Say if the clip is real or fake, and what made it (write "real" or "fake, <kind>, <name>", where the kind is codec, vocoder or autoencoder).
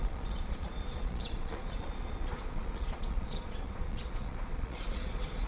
fake, vocoder, Vocos